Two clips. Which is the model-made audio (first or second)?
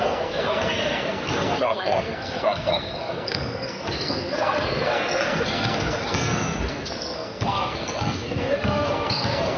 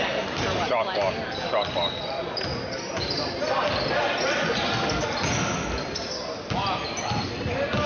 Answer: first